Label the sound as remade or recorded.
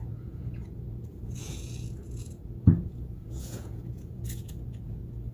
remade